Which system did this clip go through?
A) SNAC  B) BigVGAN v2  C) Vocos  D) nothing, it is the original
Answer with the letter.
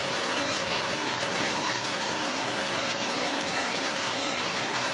A